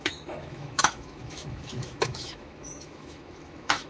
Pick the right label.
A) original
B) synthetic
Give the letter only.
B